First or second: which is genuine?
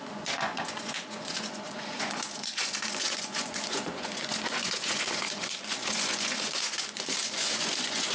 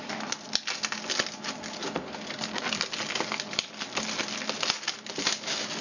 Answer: second